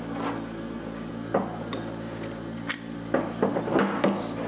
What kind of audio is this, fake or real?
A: real